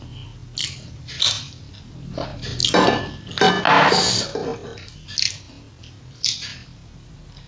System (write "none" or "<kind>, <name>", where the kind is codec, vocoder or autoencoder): none